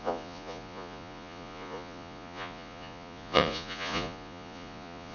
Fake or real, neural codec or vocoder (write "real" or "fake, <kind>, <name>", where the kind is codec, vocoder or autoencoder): fake, vocoder, Vocos